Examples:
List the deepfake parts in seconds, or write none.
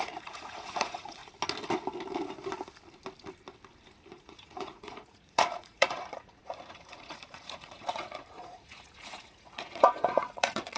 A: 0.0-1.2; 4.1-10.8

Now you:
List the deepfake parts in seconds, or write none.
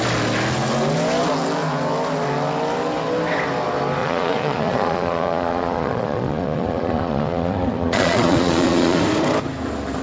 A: 4.0-9.0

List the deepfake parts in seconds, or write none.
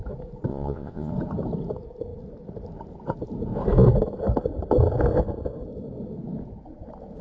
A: 0.5-1.1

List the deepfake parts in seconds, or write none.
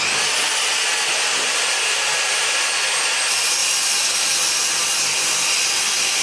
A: none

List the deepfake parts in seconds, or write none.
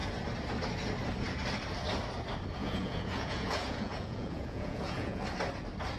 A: 2.6-5.2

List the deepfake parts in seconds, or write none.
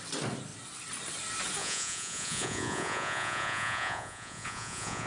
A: 1.6-5.1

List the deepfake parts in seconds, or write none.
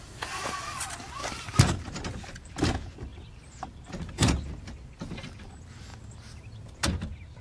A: none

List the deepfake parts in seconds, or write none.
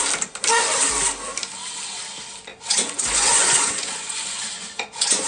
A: 2.5-5.3